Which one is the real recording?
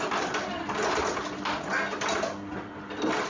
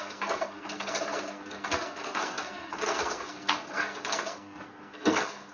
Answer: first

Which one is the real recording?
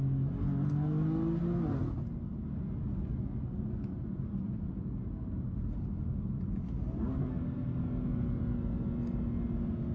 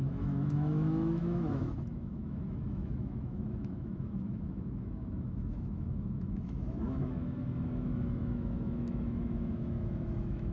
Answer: first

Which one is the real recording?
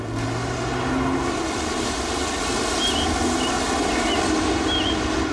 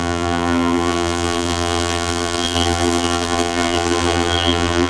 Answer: first